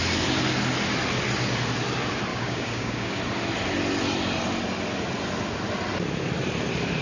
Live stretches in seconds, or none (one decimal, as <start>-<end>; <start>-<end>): 0.0-2.3; 3.2-7.0